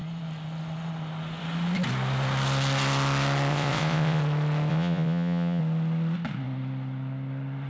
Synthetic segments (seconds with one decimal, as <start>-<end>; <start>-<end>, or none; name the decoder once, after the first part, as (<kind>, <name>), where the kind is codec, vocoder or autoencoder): 3.5-4.2 (vocoder, Vocos); 4.7-5.6